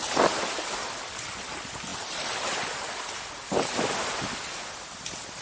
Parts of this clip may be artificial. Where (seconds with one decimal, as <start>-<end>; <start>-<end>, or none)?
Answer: none